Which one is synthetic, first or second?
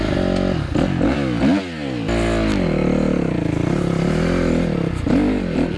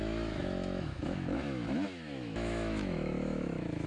second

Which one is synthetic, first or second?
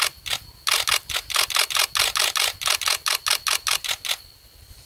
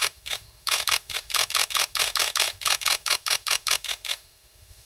second